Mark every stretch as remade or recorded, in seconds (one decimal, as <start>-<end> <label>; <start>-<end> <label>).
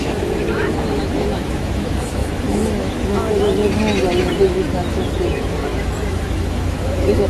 0.0-3.6 remade; 3.6-4.4 recorded; 4.4-7.3 remade